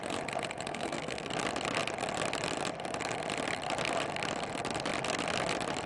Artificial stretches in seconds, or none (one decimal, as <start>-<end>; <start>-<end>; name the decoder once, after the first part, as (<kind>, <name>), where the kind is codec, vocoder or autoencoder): 0.7-1.3 (codec, SNAC)